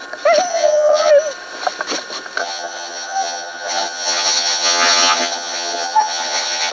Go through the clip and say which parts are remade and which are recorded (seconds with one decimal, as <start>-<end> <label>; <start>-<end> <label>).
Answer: 0.0-0.5 recorded; 0.5-1.1 remade; 1.1-2.4 recorded; 2.4-6.7 remade